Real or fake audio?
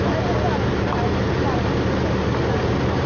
real